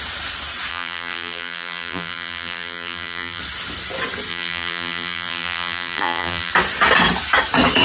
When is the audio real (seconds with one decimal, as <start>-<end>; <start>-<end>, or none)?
0.0-0.7; 3.4-4.3; 6.5-7.8